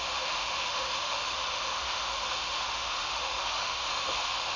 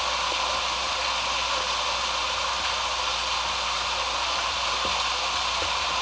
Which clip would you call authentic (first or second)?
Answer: second